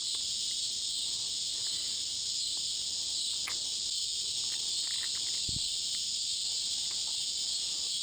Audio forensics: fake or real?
real